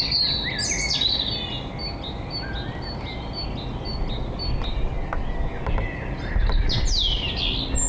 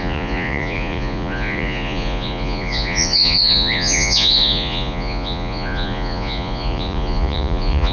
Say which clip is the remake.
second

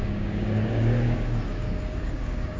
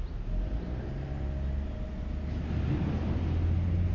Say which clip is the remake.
first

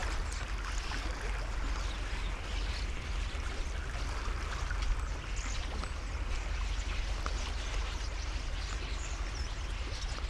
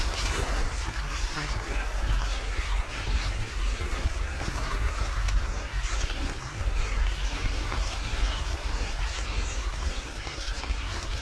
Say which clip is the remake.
second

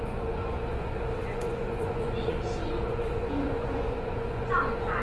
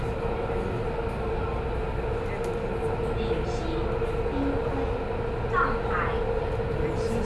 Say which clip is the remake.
first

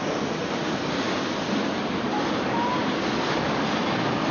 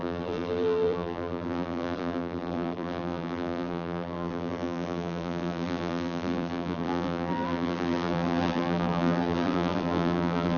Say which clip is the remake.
second